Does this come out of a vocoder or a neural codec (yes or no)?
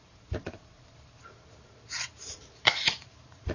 yes